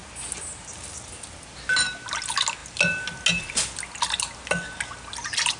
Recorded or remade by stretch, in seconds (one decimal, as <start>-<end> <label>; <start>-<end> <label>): 0.0-5.6 recorded